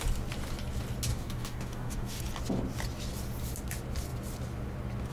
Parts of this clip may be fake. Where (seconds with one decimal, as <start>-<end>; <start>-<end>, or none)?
1.1-2.2